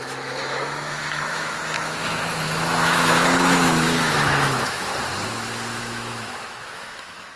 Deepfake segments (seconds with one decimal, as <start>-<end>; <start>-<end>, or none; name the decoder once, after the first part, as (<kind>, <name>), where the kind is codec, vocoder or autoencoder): 0.0-4.9 (autoencoder, DAC-VAE); 5.7-7.4